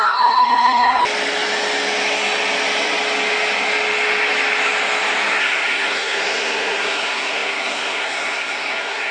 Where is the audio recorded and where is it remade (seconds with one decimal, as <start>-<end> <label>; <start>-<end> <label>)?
0.0-1.0 remade; 1.0-5.4 recorded; 5.4-9.1 remade